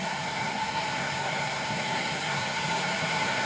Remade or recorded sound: remade